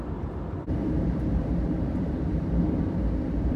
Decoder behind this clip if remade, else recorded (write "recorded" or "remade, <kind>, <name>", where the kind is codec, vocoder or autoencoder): remade, vocoder, BigVGAN v2